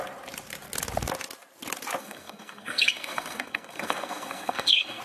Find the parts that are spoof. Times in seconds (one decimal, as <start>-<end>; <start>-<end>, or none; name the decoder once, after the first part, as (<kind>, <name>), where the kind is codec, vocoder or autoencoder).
2.0-5.0 (codec, SNAC)